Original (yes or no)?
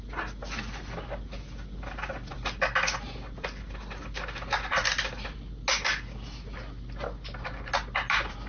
yes